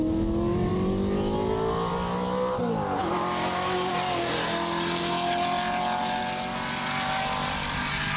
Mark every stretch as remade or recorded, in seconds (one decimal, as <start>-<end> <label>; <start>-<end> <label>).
0.0-8.2 recorded